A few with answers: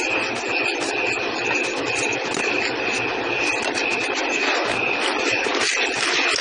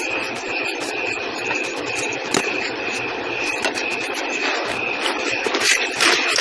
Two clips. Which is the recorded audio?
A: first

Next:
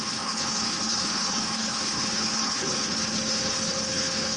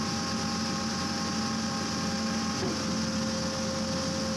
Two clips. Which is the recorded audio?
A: second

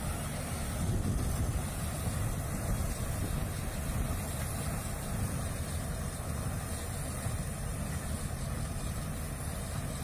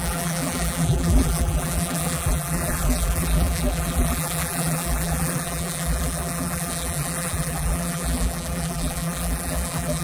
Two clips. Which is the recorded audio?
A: first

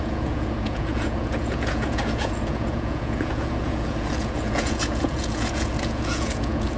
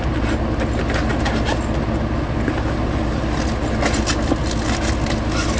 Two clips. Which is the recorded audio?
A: second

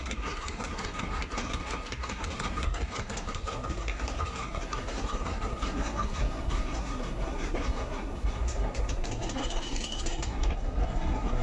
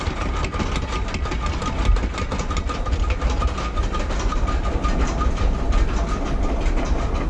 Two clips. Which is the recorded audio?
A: second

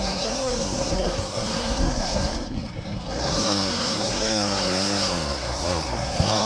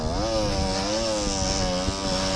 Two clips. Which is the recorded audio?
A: second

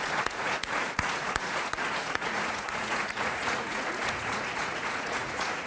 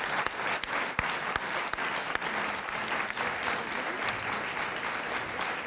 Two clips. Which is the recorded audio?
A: second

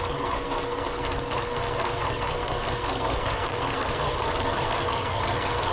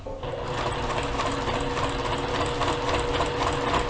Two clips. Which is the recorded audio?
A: second